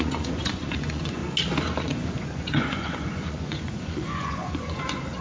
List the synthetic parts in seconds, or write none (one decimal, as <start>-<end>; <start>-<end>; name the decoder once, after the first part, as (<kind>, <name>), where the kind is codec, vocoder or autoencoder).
0.0-1.2 (vocoder, Vocos); 1.8-5.2